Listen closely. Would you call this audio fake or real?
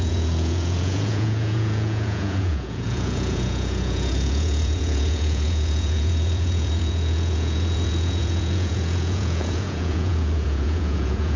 fake